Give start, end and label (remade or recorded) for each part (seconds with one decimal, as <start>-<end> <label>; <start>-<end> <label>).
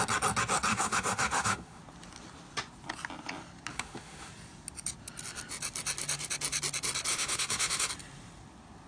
0.0-0.7 recorded; 0.7-1.8 remade; 1.8-3.7 recorded; 3.7-4.3 remade; 4.3-7.1 recorded; 7.1-7.9 remade; 7.9-8.9 recorded